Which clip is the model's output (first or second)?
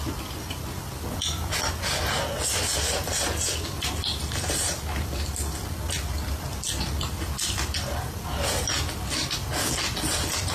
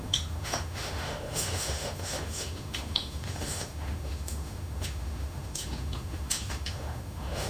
second